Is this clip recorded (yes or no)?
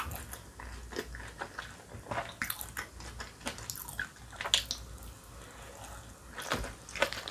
yes